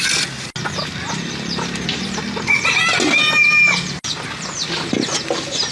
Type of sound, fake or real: real